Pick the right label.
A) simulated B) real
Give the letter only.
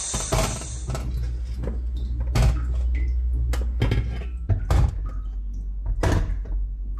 B